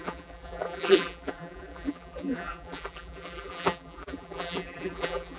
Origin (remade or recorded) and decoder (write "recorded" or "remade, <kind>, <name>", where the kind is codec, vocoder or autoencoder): remade, vocoder, BigVGAN v2